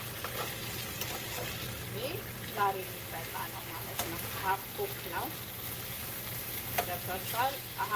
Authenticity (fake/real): real